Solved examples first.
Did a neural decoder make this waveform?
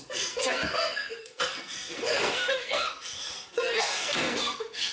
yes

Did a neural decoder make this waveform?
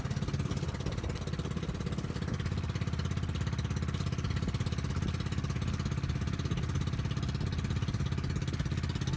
no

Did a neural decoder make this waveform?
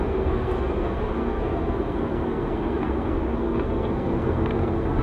yes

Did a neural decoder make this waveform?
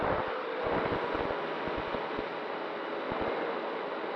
no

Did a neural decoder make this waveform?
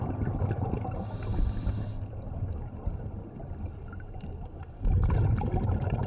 no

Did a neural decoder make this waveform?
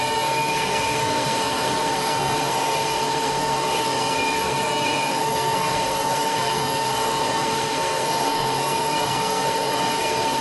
yes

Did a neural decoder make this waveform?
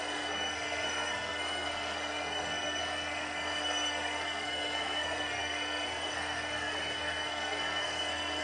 yes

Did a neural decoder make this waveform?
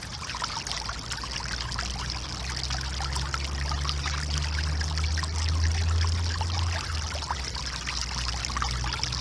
no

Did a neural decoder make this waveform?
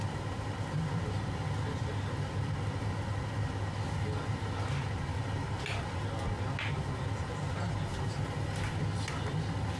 no